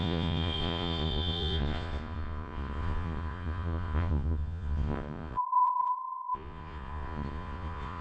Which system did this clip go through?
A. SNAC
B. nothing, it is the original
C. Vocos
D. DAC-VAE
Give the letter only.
C